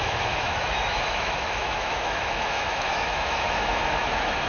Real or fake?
fake